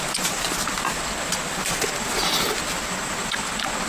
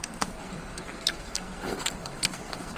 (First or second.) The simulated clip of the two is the second